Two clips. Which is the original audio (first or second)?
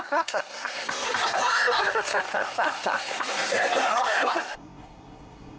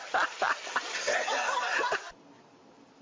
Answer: second